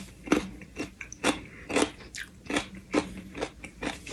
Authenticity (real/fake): real